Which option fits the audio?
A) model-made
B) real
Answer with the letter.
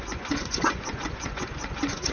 A